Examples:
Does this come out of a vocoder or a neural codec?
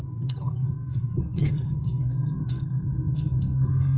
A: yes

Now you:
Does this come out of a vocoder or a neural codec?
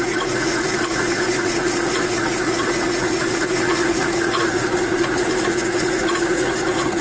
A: yes